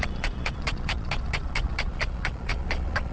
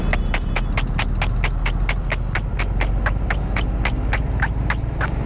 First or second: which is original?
second